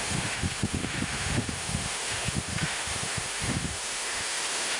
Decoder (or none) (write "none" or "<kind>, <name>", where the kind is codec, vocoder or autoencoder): autoencoder, DAC-VAE